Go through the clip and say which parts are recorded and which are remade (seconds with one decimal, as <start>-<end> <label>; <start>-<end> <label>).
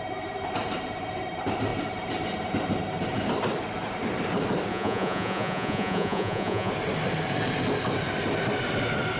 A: 0.0-4.7 recorded; 4.7-6.7 remade; 6.7-9.2 recorded